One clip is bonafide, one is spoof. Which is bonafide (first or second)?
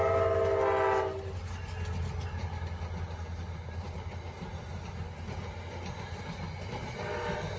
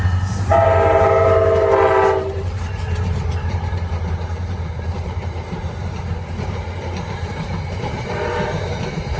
first